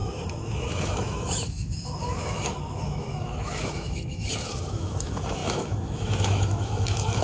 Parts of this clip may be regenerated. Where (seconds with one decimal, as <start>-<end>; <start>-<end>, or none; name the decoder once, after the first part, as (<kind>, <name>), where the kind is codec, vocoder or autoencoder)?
0.0-7.2 (autoencoder, DAC-VAE)